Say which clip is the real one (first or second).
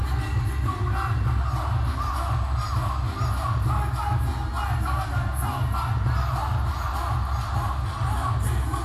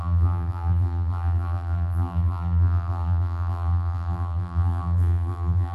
first